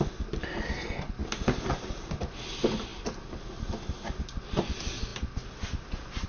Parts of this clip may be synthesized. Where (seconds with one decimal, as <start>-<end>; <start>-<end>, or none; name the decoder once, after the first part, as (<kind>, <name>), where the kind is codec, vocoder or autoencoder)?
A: none

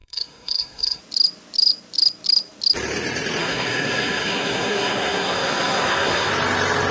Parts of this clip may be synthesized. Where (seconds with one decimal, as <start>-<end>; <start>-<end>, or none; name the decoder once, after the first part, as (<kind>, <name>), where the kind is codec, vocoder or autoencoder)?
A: 0.0-1.0 (codec, SNAC); 3.4-6.3

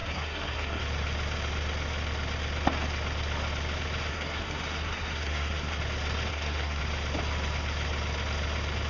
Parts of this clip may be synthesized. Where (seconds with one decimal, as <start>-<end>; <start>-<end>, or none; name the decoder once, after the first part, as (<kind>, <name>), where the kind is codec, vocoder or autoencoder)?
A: 0.0-0.8 (codec, SNAC); 4.1-5.8; 6.3-6.8

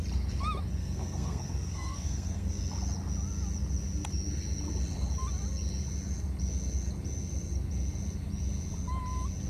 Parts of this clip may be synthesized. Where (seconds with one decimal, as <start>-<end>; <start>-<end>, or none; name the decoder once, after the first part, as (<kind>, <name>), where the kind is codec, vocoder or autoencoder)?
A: 0.8-2.6 (codec, SNAC)